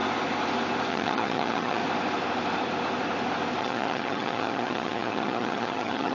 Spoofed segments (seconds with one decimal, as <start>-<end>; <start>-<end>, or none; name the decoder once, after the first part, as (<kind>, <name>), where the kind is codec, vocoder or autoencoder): 0.9-1.8 (vocoder, HiFi-GAN); 3.6-6.1